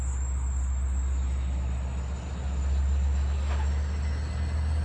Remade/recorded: recorded